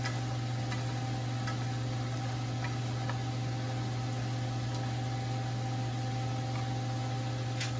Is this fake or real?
real